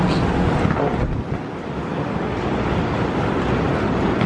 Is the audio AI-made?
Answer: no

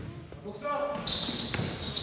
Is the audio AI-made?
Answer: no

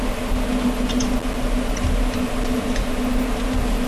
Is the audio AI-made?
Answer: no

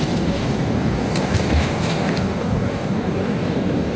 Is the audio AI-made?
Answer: yes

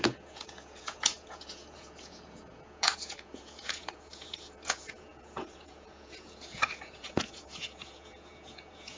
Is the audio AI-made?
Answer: yes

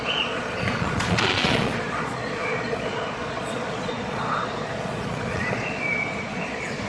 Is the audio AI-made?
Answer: yes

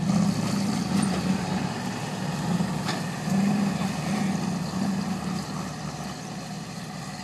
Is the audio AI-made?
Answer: no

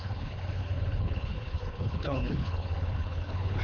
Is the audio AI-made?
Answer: yes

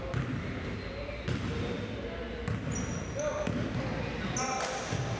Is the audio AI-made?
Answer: no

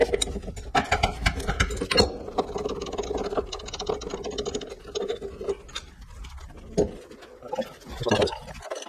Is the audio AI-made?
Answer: no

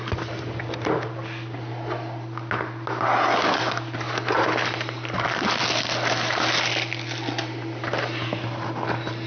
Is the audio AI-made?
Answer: no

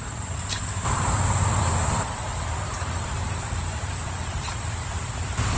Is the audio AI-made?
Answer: yes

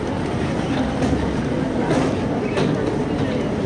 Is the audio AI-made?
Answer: no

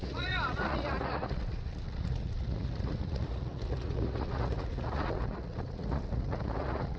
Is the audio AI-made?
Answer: yes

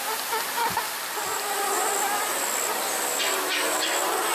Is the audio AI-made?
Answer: no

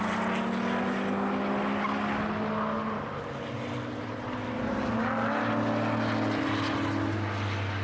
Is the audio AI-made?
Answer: no